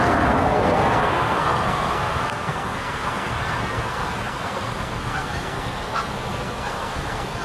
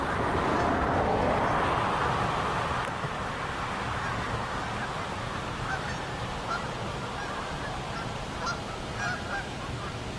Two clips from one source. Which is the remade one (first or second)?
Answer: first